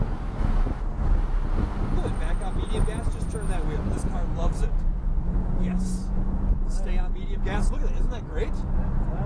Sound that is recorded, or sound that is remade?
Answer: recorded